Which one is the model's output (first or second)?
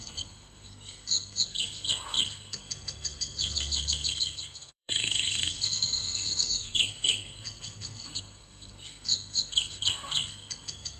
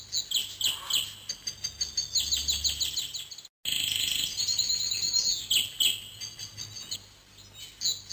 first